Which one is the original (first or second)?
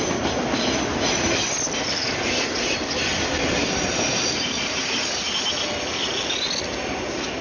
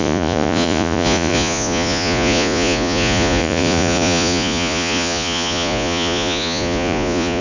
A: first